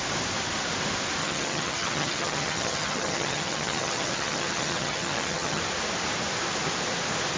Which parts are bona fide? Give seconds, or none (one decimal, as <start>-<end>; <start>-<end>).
0.0-1.2; 5.6-7.4